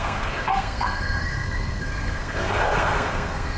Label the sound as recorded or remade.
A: remade